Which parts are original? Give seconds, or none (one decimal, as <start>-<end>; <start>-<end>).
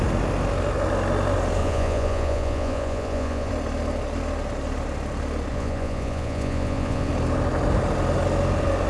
0.0-1.6; 3.5-5.5; 7.1-8.9